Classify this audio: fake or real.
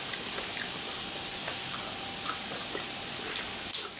real